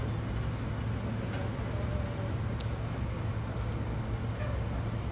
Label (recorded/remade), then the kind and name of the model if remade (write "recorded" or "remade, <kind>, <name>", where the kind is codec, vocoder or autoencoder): recorded